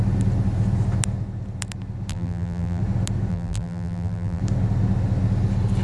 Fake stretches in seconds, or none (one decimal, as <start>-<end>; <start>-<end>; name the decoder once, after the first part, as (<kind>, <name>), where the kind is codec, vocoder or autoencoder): 2.1-2.8 (vocoder, BigVGAN v2); 3.3-4.4